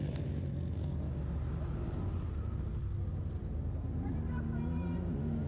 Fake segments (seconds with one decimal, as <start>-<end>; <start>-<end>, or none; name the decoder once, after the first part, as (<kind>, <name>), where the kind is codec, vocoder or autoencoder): none